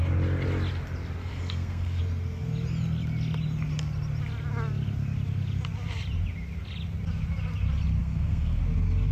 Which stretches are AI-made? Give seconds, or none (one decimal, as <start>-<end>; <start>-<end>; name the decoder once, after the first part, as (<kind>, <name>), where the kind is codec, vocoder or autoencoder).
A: 1.2-2.0 (codec, SNAC); 8.0-8.6